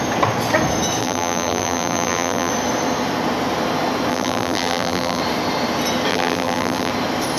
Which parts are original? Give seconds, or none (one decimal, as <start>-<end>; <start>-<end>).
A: 0.0-1.0; 2.5-4.1; 5.2-6.1; 6.9-7.4